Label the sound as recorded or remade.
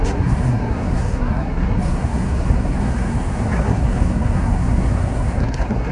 remade